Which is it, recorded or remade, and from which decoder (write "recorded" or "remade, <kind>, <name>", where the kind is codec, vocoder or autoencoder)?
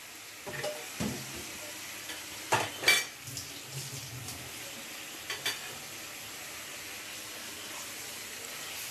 recorded